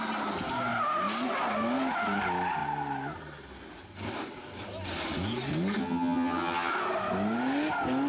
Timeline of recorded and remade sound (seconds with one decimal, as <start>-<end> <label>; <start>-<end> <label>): 0.0-5.8 recorded; 5.8-6.7 remade; 6.7-8.1 recorded